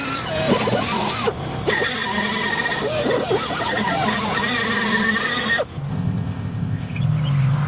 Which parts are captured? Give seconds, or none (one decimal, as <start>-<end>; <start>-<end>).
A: 0.0-5.9; 7.0-7.7